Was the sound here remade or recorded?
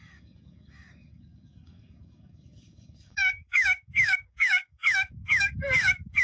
remade